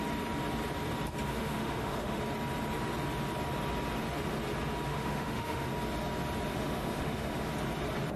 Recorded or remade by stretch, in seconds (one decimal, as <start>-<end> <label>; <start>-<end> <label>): 0.0-1.3 recorded; 1.3-2.2 remade; 2.2-4.9 recorded; 4.9-5.7 remade; 5.7-6.5 recorded; 6.5-7.5 remade; 7.5-8.2 recorded